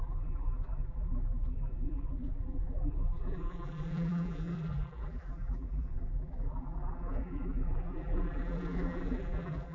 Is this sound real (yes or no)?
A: no